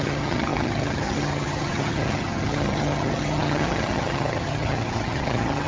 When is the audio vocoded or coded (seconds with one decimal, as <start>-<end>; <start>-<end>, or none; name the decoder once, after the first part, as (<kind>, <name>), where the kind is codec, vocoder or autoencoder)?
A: 0.0-5.7 (vocoder, HiFi-GAN)